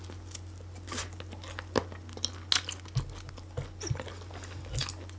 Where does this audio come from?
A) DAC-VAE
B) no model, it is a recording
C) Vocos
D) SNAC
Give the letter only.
B